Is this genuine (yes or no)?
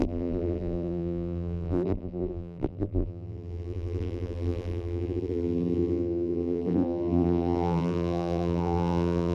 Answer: no